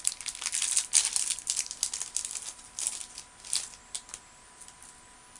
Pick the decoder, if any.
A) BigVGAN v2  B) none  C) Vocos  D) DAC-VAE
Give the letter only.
B